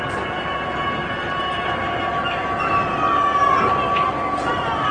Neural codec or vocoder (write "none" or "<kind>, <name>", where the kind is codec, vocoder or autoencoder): none